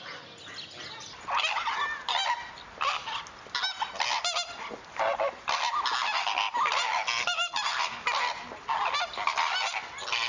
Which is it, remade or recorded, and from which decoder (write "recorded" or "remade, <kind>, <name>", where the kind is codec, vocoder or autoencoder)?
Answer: recorded